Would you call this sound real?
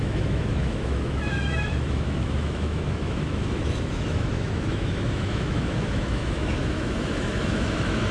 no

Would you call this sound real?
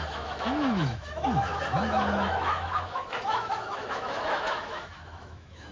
no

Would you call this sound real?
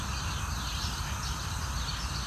yes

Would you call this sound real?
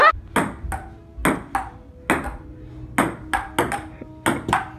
yes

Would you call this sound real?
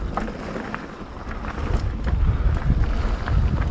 yes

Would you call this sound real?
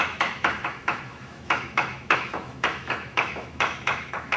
no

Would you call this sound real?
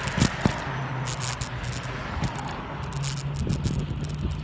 yes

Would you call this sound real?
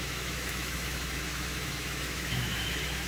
no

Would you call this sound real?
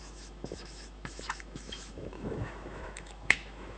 no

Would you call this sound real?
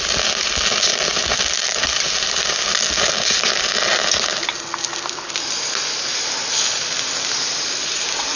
yes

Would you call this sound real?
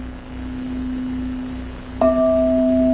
yes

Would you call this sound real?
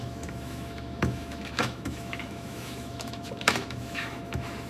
no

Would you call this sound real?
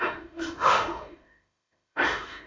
no